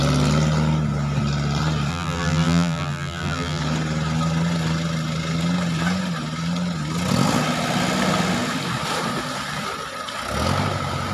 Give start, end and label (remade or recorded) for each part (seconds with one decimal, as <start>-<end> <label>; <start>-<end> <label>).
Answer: 0.0-1.9 recorded; 1.9-3.6 remade; 3.6-11.1 recorded